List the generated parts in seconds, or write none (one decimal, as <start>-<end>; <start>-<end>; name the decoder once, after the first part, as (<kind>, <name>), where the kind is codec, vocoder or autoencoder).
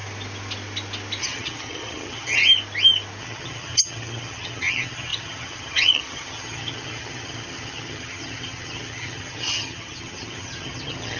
1.2-2.4 (vocoder, HiFi-GAN); 3.2-11.2